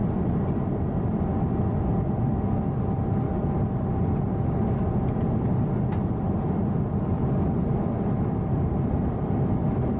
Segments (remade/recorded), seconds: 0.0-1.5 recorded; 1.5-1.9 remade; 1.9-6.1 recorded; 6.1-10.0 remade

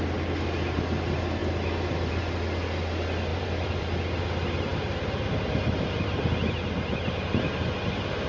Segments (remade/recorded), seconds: 0.0-3.3 recorded; 3.3-4.1 remade; 4.1-8.3 recorded

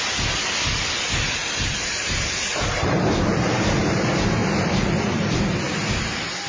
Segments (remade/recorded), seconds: 0.0-1.4 recorded; 1.4-3.2 remade; 3.2-4.4 recorded; 4.4-5.9 remade; 5.9-6.5 recorded

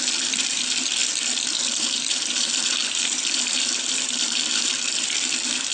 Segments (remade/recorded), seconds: 0.0-1.0 remade; 1.0-1.6 recorded; 1.6-5.7 remade

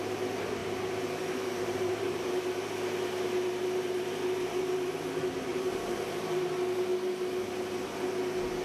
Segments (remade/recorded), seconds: 0.0-0.6 recorded; 0.6-2.3 remade; 2.3-5.5 recorded; 5.5-6.5 remade; 6.5-8.6 recorded

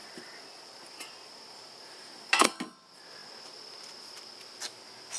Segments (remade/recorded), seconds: 0.0-2.3 remade; 2.3-5.2 recorded

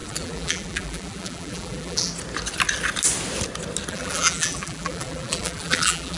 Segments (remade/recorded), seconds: 0.0-2.1 remade; 2.1-3.9 recorded; 3.9-6.2 remade

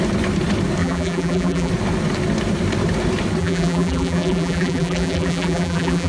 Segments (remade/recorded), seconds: 0.0-0.8 recorded; 0.8-1.7 remade; 1.7-3.4 recorded; 3.4-6.1 remade